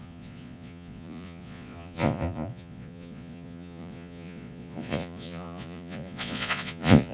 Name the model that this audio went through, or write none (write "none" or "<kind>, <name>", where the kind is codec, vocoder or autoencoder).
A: vocoder, Vocos